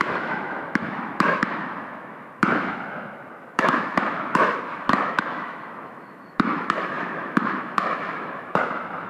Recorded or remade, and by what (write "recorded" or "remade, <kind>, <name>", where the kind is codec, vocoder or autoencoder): remade, autoencoder, DAC-VAE